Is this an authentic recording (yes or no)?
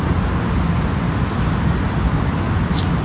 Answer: yes